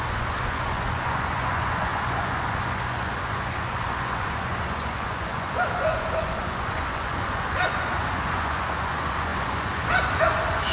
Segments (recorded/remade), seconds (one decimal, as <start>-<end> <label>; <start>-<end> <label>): 0.0-10.7 remade